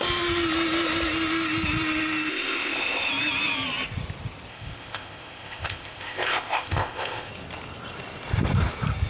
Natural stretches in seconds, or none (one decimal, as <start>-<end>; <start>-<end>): 0.0-2.3; 3.1-4.5; 7.3-9.1